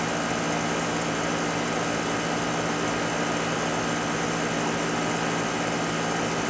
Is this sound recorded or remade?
recorded